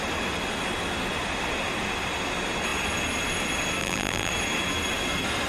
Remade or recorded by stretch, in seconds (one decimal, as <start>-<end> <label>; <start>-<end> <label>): 0.0-3.8 recorded; 3.8-4.3 remade; 4.3-5.5 recorded